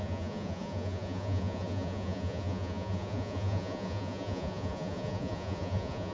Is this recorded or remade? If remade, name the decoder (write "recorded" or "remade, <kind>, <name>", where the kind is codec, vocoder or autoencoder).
remade, vocoder, Vocos